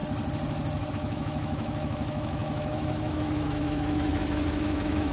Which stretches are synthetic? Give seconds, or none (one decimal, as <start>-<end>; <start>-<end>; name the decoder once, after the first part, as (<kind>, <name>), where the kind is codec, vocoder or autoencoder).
0.9-5.1 (autoencoder, DAC-VAE)